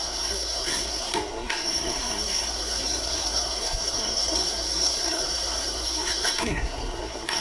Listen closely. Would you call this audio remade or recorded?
remade